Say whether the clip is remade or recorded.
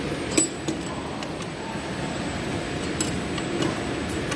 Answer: recorded